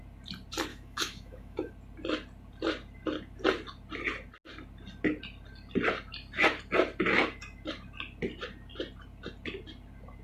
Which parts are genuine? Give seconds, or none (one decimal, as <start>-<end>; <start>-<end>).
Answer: 0.0-0.7; 1.7-10.2